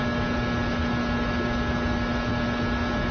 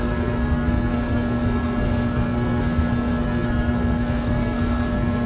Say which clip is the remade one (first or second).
second